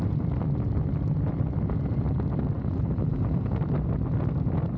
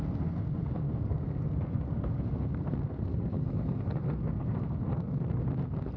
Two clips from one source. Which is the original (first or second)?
first